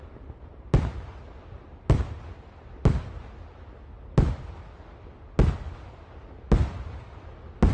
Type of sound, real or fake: real